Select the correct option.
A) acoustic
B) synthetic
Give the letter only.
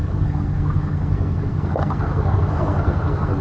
B